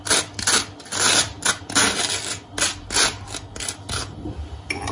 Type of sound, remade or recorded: recorded